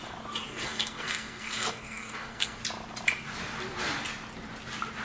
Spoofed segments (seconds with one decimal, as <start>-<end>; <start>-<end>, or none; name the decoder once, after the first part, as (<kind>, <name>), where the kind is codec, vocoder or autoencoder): 0.5-2.6 (codec, SNAC)